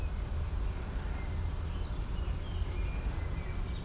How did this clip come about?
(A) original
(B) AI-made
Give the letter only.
A